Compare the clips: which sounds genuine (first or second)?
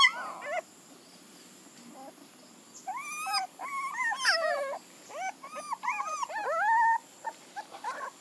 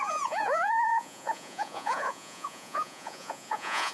first